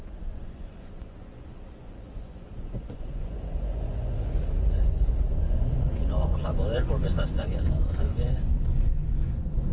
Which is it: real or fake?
fake